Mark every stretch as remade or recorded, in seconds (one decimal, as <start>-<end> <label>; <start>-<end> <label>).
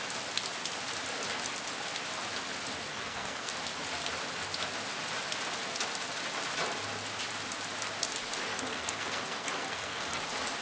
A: 0.0-2.9 recorded; 2.9-3.5 remade; 3.5-8.5 recorded; 8.5-10.2 remade; 10.2-10.6 recorded